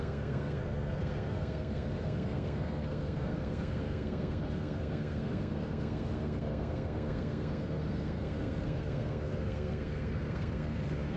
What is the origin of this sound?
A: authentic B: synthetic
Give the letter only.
B